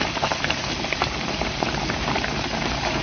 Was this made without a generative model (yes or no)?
no